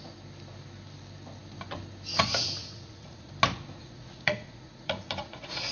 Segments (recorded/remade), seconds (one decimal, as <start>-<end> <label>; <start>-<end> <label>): 0.0-2.6 recorded; 2.6-3.3 remade; 3.3-3.8 recorded; 3.8-5.7 remade